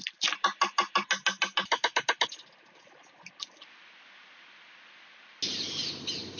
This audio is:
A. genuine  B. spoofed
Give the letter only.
A